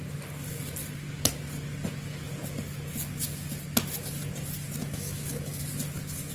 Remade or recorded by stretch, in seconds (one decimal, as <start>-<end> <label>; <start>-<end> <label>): 0.0-4.8 recorded; 4.8-5.6 remade; 5.6-6.3 recorded